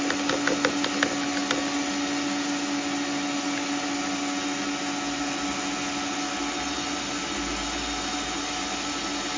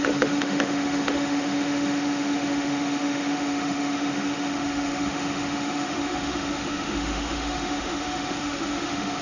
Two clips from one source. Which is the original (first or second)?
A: first